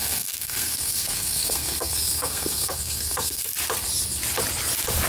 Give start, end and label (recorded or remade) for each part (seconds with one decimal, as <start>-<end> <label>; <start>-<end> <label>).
0.0-3.5 remade; 3.5-5.1 recorded